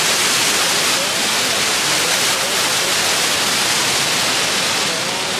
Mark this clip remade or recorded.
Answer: recorded